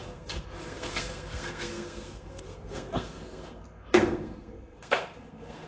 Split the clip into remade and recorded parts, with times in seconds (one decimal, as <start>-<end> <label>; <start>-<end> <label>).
0.0-5.7 remade